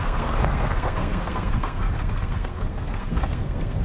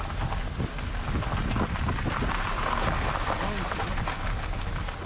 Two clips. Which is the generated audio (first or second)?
first